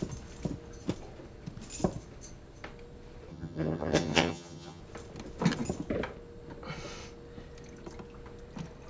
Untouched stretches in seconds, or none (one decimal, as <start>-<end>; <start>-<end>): 0.0-3.3; 4.8-8.9